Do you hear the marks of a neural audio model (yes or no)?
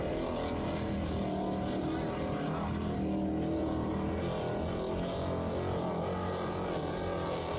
no